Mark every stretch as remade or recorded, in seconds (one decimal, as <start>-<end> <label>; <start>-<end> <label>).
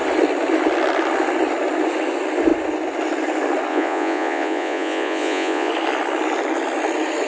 0.0-3.7 recorded; 3.7-5.7 remade; 5.7-7.3 recorded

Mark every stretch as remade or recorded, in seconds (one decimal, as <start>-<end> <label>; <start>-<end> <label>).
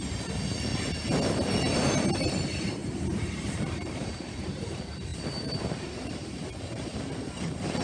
0.0-0.7 remade; 0.7-1.6 recorded; 1.6-2.8 remade; 2.8-3.5 recorded; 3.5-7.8 remade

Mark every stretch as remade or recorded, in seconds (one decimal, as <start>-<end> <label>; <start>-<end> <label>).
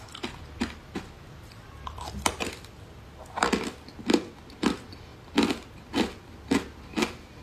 0.0-5.1 remade; 5.1-5.7 recorded; 5.7-7.4 remade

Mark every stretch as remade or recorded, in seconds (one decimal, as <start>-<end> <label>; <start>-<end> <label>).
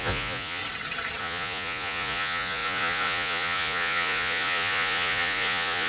0.0-0.6 remade; 0.6-1.2 recorded; 1.2-5.9 remade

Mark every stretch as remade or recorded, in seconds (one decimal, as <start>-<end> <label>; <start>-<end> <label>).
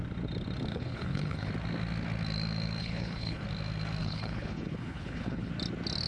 0.0-0.7 recorded; 0.7-1.5 remade; 1.5-2.8 recorded; 2.8-3.4 remade; 3.4-4.0 recorded; 4.0-5.5 remade; 5.5-6.1 recorded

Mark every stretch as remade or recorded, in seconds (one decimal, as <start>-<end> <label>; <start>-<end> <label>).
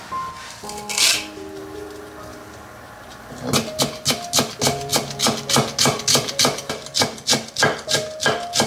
0.0-8.7 recorded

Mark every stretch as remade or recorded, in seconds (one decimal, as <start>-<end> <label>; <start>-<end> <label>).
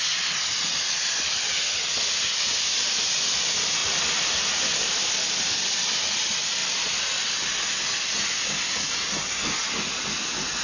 0.0-10.6 recorded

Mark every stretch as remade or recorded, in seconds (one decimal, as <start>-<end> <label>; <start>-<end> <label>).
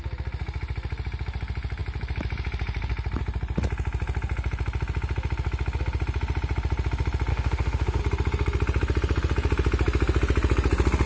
0.0-7.3 recorded; 7.3-8.0 remade; 8.0-11.1 recorded